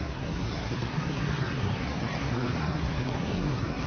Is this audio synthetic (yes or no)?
yes